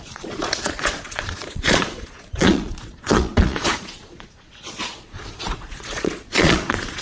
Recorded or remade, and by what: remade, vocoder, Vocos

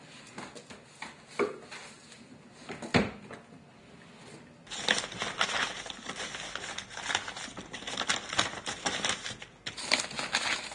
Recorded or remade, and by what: recorded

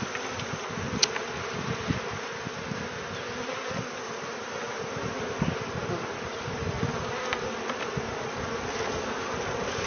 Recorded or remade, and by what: recorded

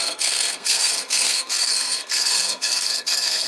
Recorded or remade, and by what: remade, codec, SNAC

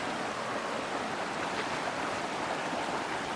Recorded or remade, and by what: recorded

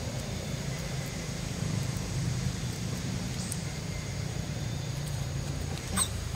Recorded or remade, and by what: remade, vocoder, BigVGAN v2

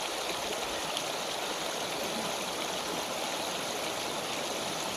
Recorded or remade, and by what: recorded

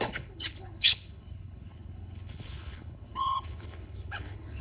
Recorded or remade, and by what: remade, codec, HILCodec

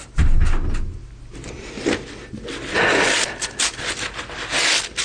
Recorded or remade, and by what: recorded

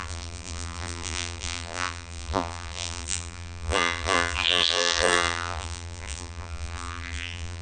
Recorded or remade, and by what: remade, vocoder, BigVGAN v2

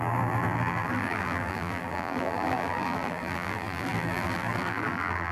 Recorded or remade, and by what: remade, vocoder, BigVGAN v2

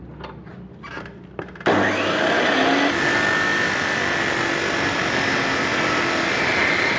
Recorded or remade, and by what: recorded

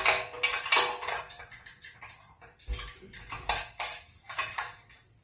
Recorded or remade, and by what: recorded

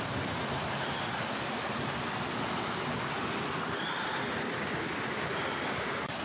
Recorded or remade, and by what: recorded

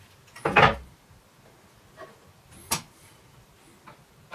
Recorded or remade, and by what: recorded